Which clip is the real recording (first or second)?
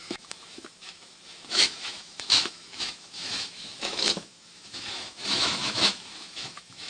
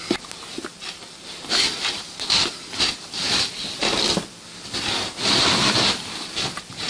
second